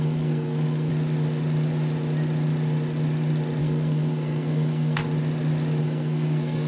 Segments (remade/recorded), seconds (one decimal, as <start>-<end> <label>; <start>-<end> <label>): 0.0-0.9 remade; 0.9-3.6 recorded; 3.6-5.0 remade; 5.0-5.8 recorded; 5.8-6.7 remade